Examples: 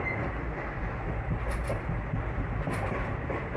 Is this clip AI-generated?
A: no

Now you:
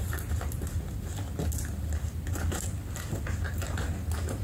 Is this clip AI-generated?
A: no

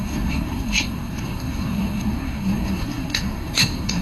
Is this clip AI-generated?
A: yes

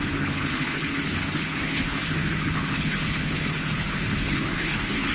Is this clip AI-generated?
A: yes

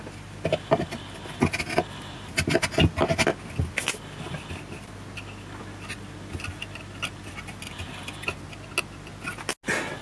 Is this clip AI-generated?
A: no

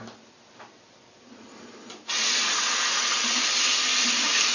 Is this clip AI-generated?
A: no